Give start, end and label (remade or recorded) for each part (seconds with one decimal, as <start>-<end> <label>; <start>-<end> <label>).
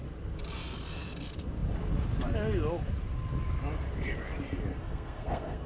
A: 0.0-4.7 recorded; 4.7-5.7 remade